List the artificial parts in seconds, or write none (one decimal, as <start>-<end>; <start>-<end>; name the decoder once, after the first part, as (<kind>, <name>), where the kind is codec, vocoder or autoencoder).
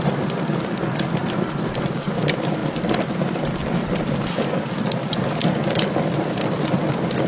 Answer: 1.2-2.1 (vocoder, BigVGAN v2)